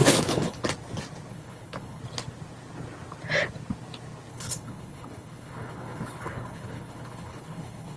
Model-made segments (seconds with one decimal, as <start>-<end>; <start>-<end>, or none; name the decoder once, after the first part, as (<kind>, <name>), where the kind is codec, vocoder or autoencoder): 0.0-0.6 (codec, HILCodec); 1.3-2.0; 4.3-8.0